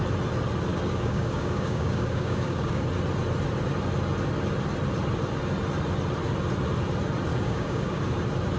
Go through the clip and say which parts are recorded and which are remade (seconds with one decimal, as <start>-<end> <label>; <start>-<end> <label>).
0.0-0.7 recorded; 0.7-2.8 remade; 2.8-7.3 recorded; 7.3-8.0 remade; 8.0-8.6 recorded